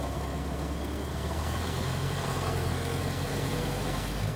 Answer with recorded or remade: remade